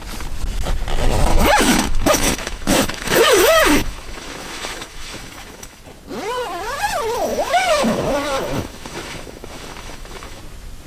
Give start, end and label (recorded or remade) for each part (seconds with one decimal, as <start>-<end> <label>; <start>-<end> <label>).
0.0-1.3 recorded; 1.3-5.8 remade; 5.8-7.3 recorded; 7.3-10.4 remade; 10.4-10.9 recorded